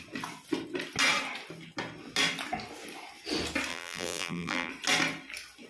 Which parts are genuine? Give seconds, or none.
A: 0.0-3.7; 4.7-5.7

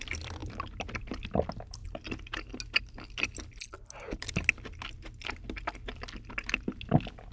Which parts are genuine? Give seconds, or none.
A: 0.0-7.3

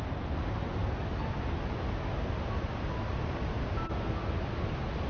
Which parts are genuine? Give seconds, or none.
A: 0.0-5.1

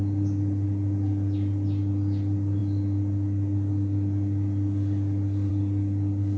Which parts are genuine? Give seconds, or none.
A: 0.0-6.4

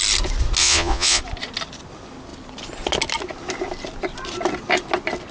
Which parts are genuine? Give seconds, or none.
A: 0.0-0.6; 1.2-5.3

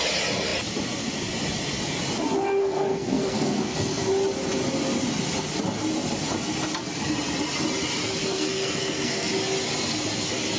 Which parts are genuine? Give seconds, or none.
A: 0.0-2.6; 4.1-8.2; 9.3-10.6

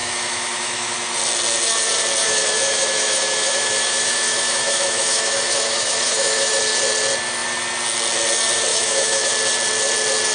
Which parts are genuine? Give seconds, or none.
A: 0.9-2.2; 6.6-8.7; 9.3-10.3

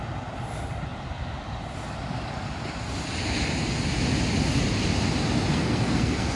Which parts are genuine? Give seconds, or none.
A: 0.0-5.5